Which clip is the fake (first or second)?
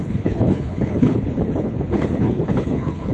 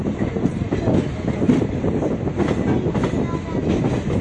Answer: first